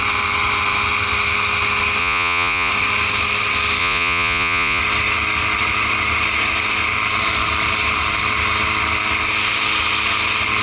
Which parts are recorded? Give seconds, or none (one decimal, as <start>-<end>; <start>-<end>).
0.0-2.0; 2.7-3.8; 4.8-10.6